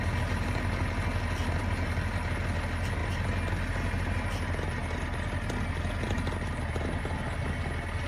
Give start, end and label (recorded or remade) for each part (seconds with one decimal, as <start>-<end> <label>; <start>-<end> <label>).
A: 0.0-8.1 recorded